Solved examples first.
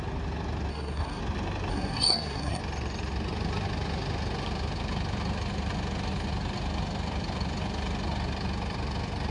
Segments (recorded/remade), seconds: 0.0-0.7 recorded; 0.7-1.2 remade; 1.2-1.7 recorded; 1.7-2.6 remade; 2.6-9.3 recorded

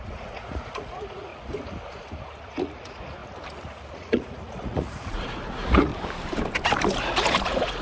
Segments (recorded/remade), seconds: 0.0-1.3 remade; 1.3-2.5 recorded; 2.5-3.2 remade; 3.2-3.9 recorded; 3.9-5.9 remade; 5.9-7.0 recorded; 7.0-7.8 remade

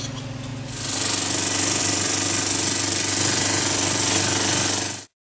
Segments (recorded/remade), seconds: 0.0-5.4 recorded

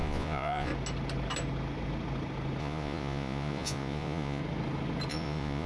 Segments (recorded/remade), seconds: 0.0-0.7 remade; 0.7-2.6 recorded; 2.6-4.4 remade; 4.4-5.1 recorded; 5.1-5.7 remade

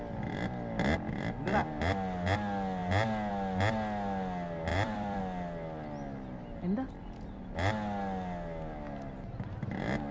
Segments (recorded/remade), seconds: 0.0-4.7 recorded; 4.7-5.2 remade; 5.2-10.1 recorded

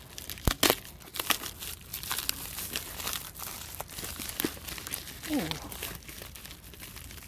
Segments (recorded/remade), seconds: 0.0-7.3 recorded

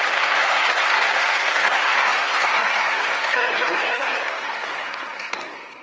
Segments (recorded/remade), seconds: 0.0-5.8 remade

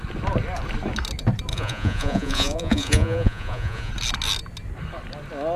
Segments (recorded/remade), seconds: 0.0-1.5 recorded; 1.5-3.9 remade; 3.9-5.6 recorded